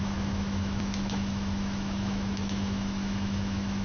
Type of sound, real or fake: fake